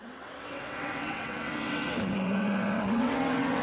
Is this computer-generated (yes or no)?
yes